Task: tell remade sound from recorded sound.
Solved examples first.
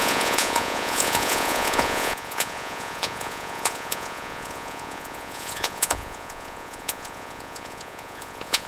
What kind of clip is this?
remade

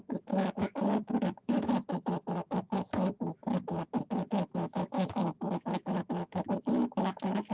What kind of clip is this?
remade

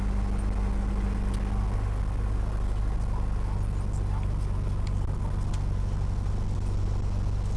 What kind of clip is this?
recorded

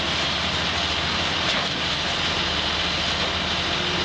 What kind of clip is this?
recorded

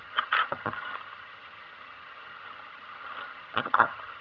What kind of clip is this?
remade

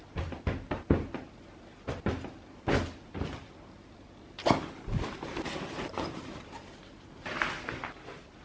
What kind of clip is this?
recorded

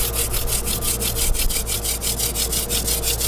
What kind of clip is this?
recorded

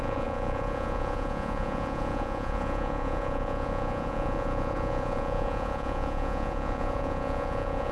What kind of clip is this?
remade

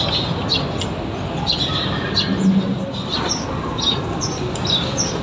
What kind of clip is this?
recorded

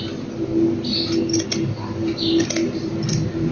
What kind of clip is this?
recorded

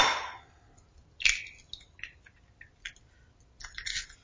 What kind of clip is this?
recorded